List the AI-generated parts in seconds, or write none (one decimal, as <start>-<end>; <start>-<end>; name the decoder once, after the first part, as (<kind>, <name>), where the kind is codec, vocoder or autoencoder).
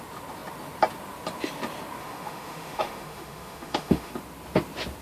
2.0-4.1 (autoencoder, DAC-VAE)